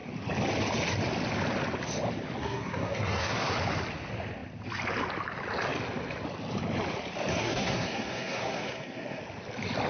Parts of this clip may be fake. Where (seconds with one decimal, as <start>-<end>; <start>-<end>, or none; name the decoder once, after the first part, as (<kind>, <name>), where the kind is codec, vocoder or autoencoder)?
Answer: 2.4-3.5 (codec, SNAC); 7.3-9.2